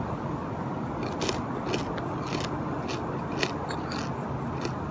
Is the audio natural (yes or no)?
yes